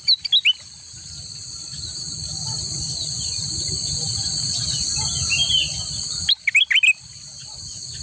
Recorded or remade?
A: recorded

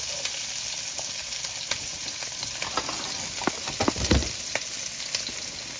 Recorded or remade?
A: recorded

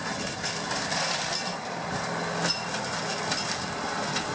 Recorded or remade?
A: recorded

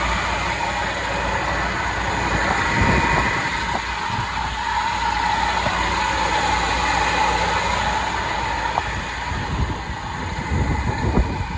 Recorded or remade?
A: recorded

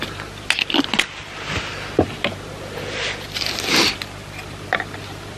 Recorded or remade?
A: recorded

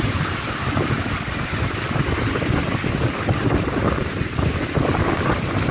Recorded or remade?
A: recorded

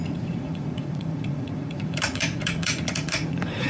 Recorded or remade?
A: remade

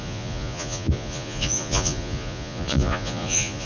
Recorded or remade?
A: remade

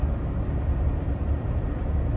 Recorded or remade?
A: recorded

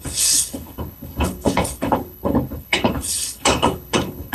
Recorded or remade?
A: remade